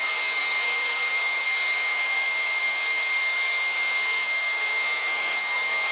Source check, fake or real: fake